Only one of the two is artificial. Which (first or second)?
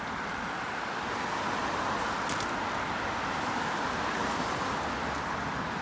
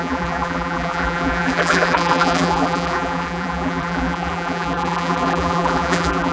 second